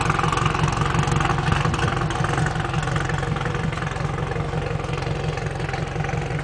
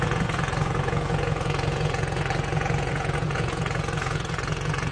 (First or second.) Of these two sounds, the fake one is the second